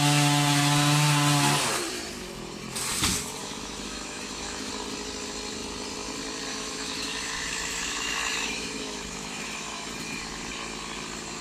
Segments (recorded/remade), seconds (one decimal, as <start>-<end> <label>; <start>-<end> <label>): 0.0-3.4 recorded; 3.4-4.7 remade; 4.7-6.5 recorded; 6.5-9.9 remade; 9.9-11.4 recorded